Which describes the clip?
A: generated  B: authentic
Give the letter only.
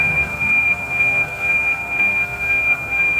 A